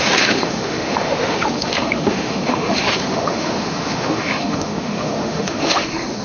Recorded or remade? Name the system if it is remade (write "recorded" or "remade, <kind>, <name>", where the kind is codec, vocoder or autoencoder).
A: remade, autoencoder, DAC-VAE